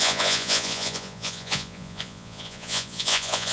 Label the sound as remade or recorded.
remade